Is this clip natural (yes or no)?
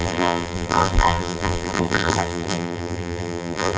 no